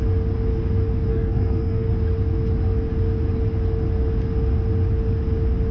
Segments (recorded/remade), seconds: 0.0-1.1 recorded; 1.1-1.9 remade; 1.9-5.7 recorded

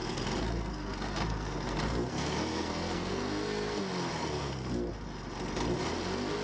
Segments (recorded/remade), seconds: 0.0-3.8 remade; 3.8-4.2 recorded; 4.2-4.9 remade; 4.9-6.4 recorded

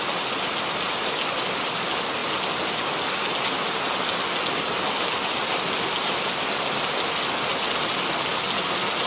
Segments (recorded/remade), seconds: 0.0-9.1 recorded

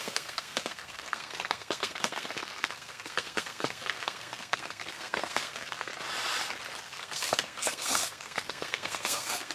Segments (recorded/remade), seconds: 0.0-5.9 remade; 5.9-6.8 recorded; 6.8-9.5 remade